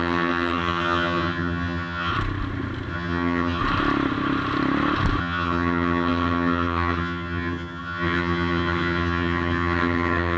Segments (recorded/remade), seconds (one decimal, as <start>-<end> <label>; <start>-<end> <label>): 0.0-2.1 remade; 2.1-2.9 recorded; 2.9-3.6 remade; 3.6-5.2 recorded; 5.2-10.4 remade

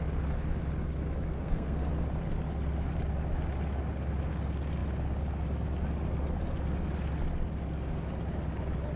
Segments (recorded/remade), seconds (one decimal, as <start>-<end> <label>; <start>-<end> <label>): 0.0-1.3 recorded; 1.3-1.9 remade; 1.9-9.0 recorded

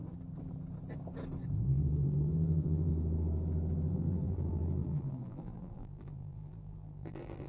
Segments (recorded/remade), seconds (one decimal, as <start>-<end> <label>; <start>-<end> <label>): 0.0-1.6 recorded; 1.6-2.9 remade; 2.9-3.9 recorded; 3.9-7.5 remade

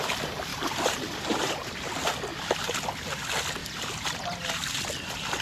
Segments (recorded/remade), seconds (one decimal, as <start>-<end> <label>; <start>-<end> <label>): 0.0-0.5 recorded; 0.5-1.8 remade; 1.8-5.4 recorded

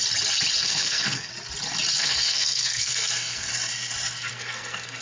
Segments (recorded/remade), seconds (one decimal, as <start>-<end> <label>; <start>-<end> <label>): 0.0-0.6 recorded; 0.6-1.3 remade; 1.3-2.0 recorded; 2.0-3.5 remade; 3.5-4.3 recorded; 4.3-5.0 remade

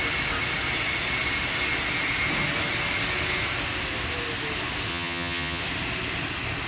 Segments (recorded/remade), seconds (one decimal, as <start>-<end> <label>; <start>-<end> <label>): 0.0-4.9 recorded; 4.9-5.6 remade; 5.6-6.7 recorded

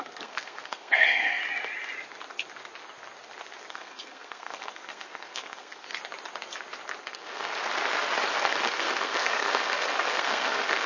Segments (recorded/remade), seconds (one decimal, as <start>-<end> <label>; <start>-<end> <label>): 0.0-1.4 remade; 1.4-3.7 recorded; 3.7-5.9 remade; 5.9-7.0 recorded; 7.0-7.5 remade; 7.5-8.4 recorded; 8.4-10.9 remade